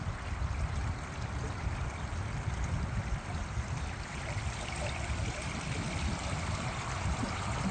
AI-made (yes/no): no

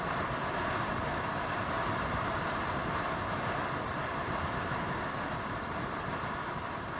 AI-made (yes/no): yes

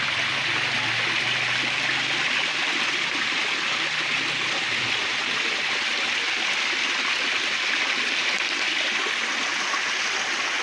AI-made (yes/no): no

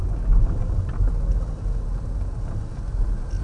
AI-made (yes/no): no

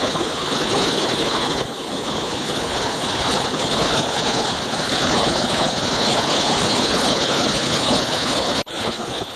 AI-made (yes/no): yes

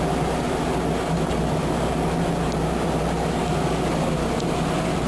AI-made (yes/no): no